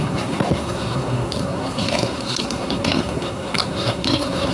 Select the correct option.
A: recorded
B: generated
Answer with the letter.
B